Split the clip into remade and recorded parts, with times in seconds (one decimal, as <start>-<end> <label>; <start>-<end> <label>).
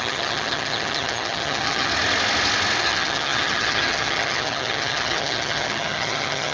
0.0-1.9 remade; 1.9-2.8 recorded; 2.8-6.5 remade